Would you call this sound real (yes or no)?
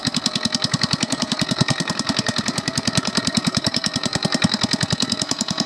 no